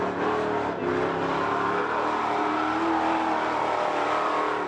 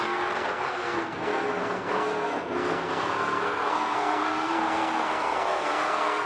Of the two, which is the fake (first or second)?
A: second